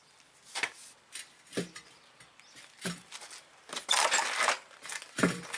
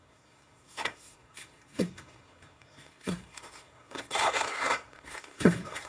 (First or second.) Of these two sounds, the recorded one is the first